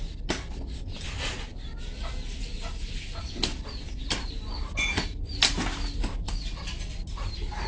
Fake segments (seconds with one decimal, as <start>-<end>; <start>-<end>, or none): none